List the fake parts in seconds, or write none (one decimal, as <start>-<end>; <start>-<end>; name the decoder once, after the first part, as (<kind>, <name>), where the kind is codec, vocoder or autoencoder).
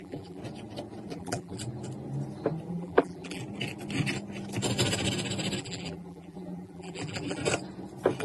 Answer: 0.0-0.4 (vocoder, BigVGAN v2); 1.1-1.6; 2.7-3.4; 5.6-7.4